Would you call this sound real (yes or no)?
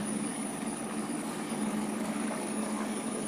no